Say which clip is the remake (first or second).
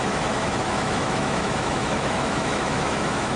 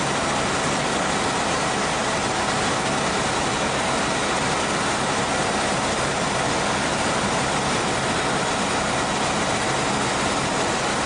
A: first